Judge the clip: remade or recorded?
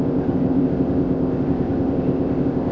remade